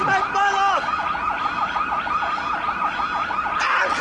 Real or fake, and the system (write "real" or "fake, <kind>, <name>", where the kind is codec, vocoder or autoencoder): real